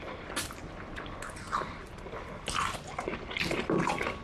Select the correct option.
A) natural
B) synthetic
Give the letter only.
A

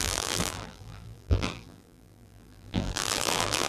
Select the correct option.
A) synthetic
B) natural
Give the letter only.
A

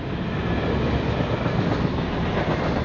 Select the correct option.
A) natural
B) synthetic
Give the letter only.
A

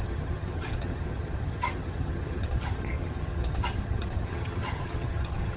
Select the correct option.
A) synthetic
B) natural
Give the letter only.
A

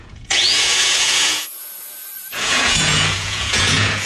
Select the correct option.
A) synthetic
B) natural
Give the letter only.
A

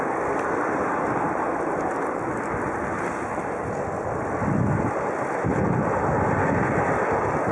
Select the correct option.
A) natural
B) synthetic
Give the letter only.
A